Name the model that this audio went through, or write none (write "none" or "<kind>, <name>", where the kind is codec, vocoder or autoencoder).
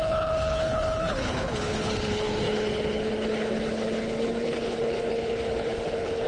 codec, HILCodec